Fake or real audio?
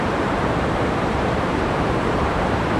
fake